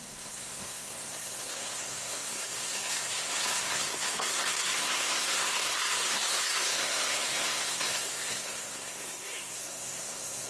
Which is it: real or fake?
fake